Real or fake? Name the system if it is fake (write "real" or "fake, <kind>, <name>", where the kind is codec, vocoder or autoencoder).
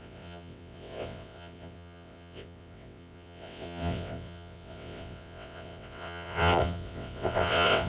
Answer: fake, vocoder, WaveNeXt